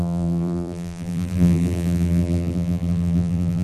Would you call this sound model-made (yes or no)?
yes